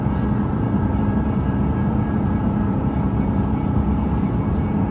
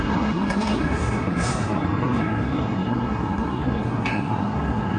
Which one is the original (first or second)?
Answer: first